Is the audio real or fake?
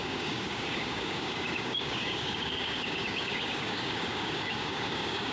fake